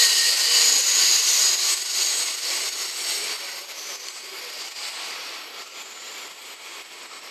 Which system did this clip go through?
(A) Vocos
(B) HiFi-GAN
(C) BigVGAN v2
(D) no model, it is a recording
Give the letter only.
D